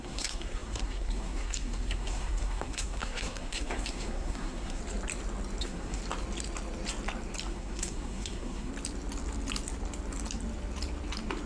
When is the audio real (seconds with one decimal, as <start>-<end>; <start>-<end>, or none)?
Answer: 4.8-5.6; 6.0-7.5; 8.7-11.5